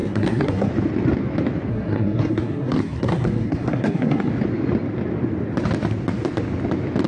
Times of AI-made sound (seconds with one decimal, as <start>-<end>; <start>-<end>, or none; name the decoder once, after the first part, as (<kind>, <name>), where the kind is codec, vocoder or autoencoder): 0.0-0.7 (codec, SNAC); 1.7-4.3